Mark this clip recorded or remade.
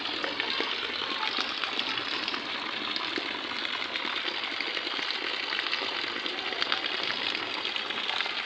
recorded